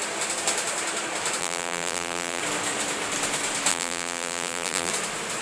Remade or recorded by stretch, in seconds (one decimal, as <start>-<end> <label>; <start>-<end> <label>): 0.0-1.4 recorded; 1.4-2.4 remade; 2.4-3.7 recorded; 3.7-4.9 remade; 4.9-5.4 recorded